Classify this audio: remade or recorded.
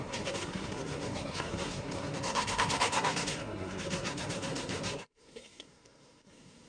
remade